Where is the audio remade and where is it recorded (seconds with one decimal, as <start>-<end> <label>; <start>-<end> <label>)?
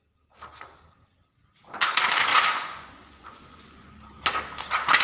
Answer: 0.0-2.3 recorded; 2.3-4.0 remade; 4.0-5.0 recorded